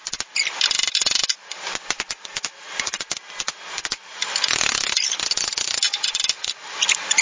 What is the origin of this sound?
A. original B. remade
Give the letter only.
A